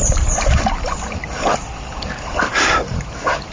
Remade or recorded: remade